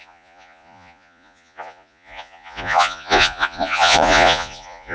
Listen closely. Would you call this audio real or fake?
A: fake